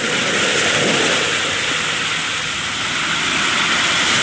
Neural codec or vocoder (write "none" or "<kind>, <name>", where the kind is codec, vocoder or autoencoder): none